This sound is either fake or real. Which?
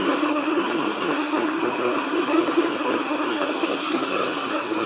fake